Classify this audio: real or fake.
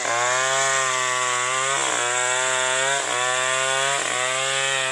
real